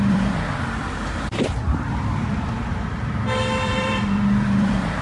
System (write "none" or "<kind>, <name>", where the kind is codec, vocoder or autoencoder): vocoder, BigVGAN v2